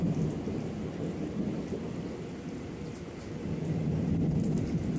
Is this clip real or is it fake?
real